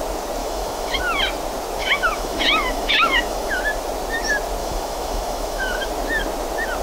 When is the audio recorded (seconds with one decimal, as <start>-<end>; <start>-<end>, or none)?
0.0-0.4; 1.0-1.8; 3.6-4.6; 5.9-6.8